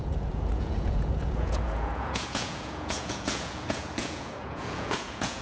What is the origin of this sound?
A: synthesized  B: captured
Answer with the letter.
A